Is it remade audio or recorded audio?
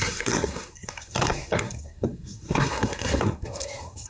remade